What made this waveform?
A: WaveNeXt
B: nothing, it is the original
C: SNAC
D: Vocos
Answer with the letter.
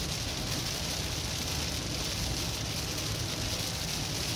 B